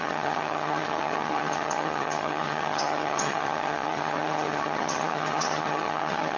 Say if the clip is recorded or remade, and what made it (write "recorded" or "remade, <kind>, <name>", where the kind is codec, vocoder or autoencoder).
remade, vocoder, HiFi-GAN